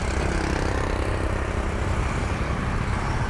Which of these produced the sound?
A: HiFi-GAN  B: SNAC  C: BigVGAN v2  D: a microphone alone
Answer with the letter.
D